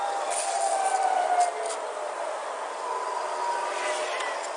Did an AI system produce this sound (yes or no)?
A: no